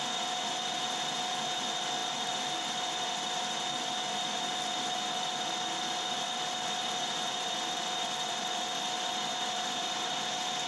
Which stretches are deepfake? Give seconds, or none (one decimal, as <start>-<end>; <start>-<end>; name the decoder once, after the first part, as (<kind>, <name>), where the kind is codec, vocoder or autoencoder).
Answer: none